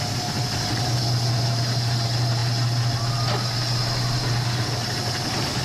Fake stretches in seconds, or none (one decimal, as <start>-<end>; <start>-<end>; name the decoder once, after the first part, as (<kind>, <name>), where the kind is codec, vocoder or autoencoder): none